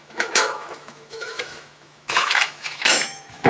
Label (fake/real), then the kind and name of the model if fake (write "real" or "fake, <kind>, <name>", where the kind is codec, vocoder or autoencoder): fake, autoencoder, DAC-VAE